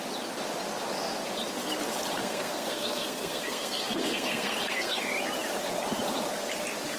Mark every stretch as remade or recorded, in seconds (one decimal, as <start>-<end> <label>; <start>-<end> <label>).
0.0-2.2 recorded; 2.2-5.0 remade; 5.0-7.0 recorded